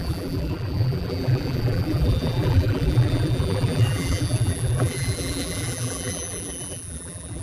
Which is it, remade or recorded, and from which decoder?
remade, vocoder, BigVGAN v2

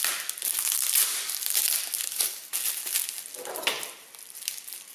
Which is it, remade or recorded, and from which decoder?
recorded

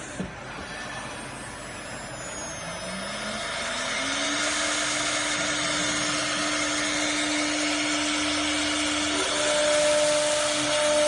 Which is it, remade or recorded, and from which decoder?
recorded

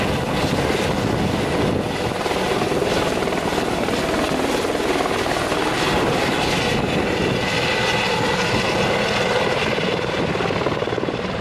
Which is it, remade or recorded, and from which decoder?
recorded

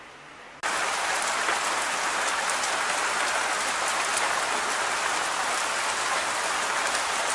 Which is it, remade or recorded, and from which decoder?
recorded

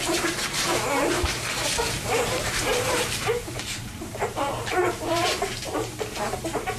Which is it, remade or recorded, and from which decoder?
remade, vocoder, BigVGAN v2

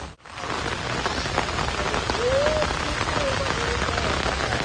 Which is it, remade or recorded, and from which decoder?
recorded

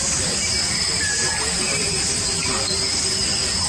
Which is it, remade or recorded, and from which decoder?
remade, vocoder, BigVGAN v2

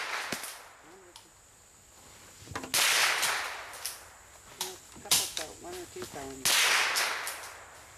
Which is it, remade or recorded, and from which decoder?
recorded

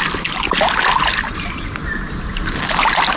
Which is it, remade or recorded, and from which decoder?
recorded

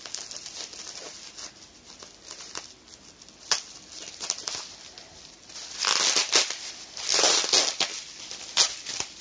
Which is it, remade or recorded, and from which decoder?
recorded